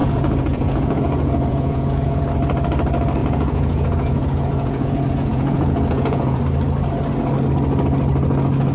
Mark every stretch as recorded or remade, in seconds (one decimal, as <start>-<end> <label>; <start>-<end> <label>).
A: 0.0-2.2 remade; 2.2-3.2 recorded; 3.2-6.4 remade; 6.4-8.7 recorded